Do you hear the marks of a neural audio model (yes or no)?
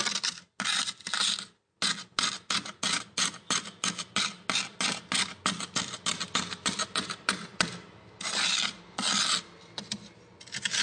no